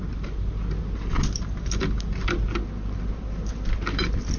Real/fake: real